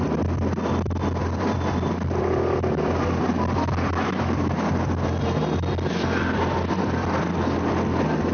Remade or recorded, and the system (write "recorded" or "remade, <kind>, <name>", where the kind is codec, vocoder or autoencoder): recorded